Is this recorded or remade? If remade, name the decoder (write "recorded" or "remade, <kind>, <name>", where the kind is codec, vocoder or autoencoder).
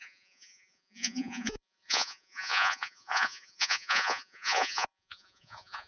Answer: remade, vocoder, Vocos